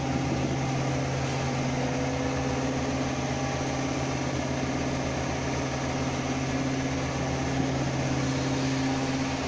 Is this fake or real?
real